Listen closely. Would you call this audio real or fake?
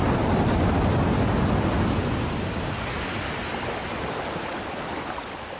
real